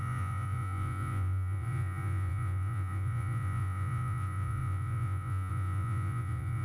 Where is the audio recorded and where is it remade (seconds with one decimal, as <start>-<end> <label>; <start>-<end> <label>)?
0.0-6.6 remade